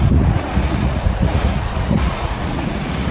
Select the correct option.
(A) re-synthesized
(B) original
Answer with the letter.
A